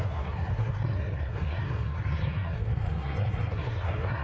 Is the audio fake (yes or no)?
yes